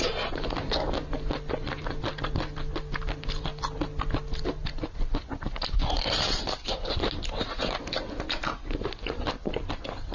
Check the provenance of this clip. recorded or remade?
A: recorded